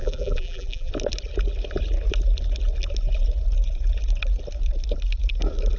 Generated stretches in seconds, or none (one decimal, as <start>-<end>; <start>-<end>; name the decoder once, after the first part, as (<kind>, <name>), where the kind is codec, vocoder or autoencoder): 0.0-0.9 (vocoder, BigVGAN v2)